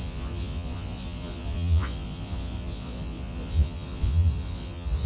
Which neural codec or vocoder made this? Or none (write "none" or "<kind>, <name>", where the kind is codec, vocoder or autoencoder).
vocoder, Vocos